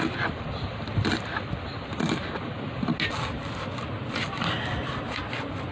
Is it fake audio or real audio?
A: real